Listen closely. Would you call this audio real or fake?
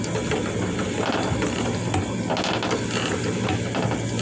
real